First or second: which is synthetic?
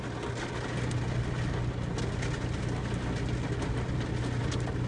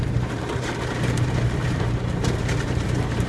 second